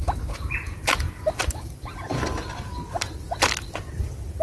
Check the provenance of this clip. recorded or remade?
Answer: recorded